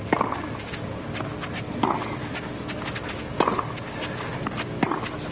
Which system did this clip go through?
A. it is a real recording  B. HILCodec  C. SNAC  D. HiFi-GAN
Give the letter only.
A